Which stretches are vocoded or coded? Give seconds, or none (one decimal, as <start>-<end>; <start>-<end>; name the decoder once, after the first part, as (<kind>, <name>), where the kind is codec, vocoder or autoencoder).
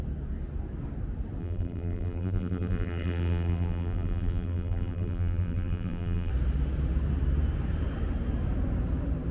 1.4-6.3 (vocoder, BigVGAN v2)